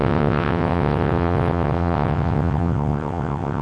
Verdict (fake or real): fake